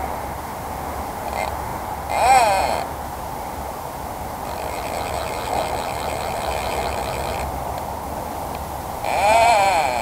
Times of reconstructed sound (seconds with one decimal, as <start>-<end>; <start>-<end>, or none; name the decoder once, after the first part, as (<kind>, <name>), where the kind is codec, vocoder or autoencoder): 0.0-1.7 (vocoder, BigVGAN v2); 2.6-10.0